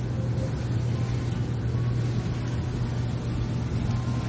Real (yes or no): yes